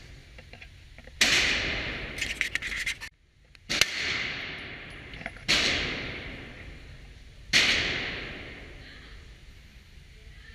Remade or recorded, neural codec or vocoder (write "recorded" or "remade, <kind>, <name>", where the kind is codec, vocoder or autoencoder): recorded